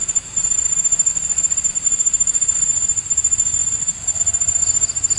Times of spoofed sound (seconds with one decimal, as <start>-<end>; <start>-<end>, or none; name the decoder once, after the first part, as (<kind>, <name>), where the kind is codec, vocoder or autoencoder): 1.1-4.2 (vocoder, BigVGAN v2)